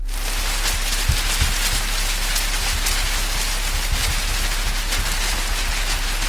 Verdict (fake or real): real